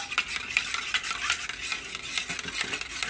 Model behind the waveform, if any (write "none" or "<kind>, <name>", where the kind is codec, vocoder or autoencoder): none